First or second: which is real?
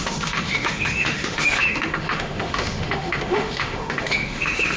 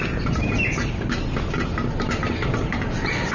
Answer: second